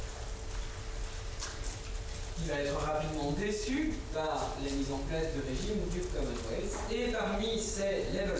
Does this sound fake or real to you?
real